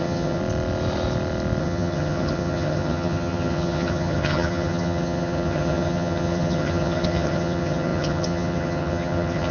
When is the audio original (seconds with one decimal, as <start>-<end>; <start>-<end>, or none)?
0.4-1.6